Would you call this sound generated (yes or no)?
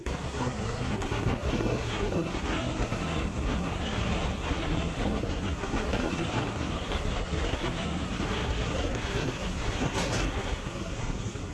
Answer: yes